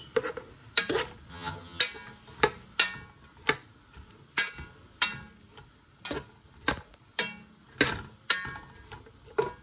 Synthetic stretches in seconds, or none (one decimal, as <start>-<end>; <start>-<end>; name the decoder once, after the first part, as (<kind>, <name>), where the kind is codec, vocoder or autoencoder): 1.3-1.8 (vocoder, HiFi-GAN)